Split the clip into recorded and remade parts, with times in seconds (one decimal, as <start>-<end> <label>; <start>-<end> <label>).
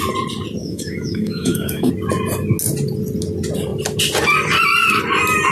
0.0-0.6 recorded; 0.6-1.9 remade; 1.9-5.5 recorded